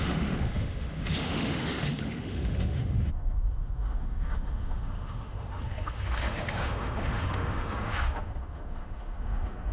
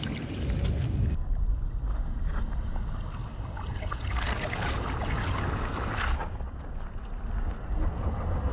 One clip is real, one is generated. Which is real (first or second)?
second